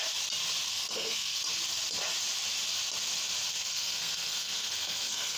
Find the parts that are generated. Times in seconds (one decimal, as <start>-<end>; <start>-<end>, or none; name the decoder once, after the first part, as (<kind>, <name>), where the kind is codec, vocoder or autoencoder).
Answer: 0.7-1.4 (codec, SNAC); 3.5-5.4